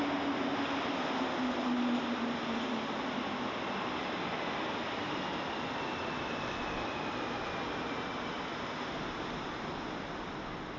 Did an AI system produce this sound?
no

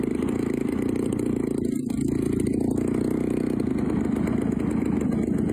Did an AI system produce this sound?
no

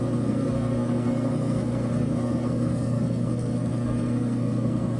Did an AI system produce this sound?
yes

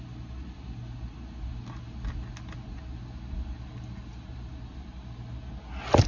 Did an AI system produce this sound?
no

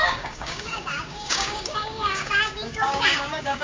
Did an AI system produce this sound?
yes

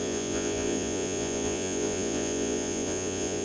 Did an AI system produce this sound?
yes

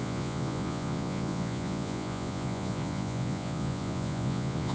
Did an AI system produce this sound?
yes